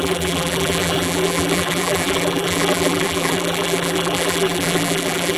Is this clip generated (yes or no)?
yes